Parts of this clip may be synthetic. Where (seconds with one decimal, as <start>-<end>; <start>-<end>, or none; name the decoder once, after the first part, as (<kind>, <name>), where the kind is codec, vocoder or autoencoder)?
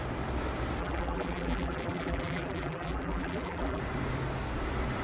0.8-3.8 (vocoder, BigVGAN v2)